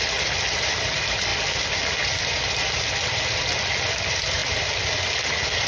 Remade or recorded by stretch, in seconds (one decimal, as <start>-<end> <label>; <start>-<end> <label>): 0.0-4.4 recorded; 4.4-5.0 remade; 5.0-5.7 recorded